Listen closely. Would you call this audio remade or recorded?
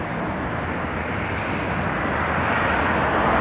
recorded